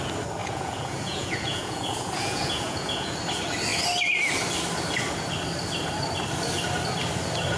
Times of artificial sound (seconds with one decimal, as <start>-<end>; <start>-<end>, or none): 0.4-3.1